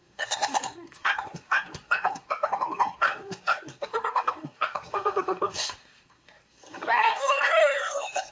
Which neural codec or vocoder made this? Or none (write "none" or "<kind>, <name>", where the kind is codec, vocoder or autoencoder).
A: codec, SNAC